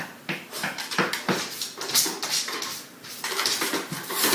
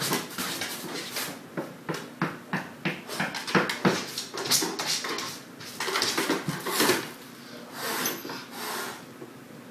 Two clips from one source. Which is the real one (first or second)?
second